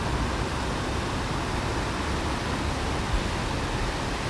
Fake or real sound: real